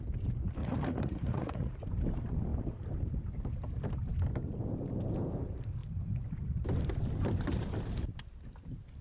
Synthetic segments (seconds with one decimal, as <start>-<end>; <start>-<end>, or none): 0.6-1.8